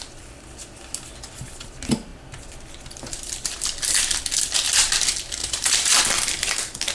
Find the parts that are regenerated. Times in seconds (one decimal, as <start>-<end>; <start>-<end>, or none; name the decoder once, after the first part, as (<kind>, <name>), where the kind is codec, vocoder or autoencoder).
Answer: 5.4-6.0 (vocoder, BigVGAN v2)